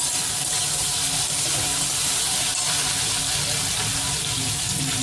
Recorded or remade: recorded